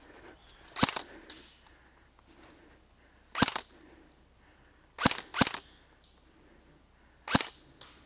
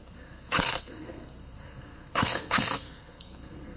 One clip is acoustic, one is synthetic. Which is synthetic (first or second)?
second